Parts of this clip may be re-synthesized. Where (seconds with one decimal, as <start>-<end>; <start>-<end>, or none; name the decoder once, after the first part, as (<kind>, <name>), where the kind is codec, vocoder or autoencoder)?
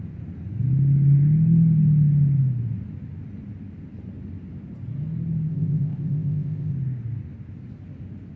5.5-6.7 (codec, ZipCodec)